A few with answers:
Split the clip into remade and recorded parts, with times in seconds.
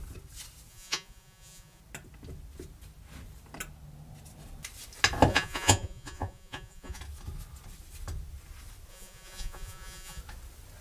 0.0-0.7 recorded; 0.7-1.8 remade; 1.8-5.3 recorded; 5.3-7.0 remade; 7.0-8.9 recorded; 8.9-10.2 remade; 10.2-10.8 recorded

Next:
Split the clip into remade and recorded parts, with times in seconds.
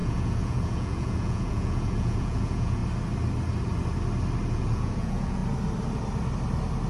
0.0-2.8 remade; 2.8-4.5 recorded; 4.5-5.4 remade; 5.4-6.9 recorded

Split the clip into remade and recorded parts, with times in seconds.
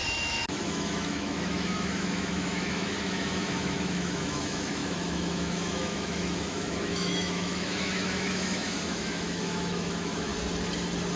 0.0-10.3 remade; 10.3-11.2 recorded